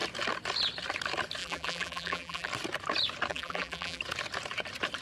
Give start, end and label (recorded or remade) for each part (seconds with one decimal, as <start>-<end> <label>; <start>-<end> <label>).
0.0-1.4 recorded; 1.4-2.5 remade; 2.5-3.3 recorded; 3.3-4.0 remade; 4.0-5.0 recorded